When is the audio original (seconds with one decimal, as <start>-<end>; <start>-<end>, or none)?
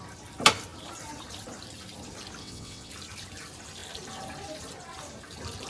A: 0.0-2.4; 2.9-5.7